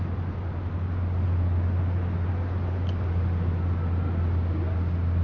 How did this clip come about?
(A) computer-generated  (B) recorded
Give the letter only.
B